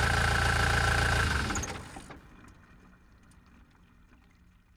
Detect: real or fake real